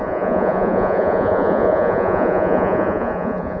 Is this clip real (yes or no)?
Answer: no